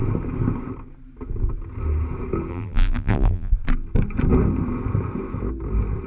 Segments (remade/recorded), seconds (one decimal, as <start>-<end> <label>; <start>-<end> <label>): 0.0-2.5 recorded; 2.5-3.5 remade; 3.5-6.1 recorded